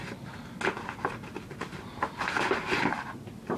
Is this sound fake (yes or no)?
no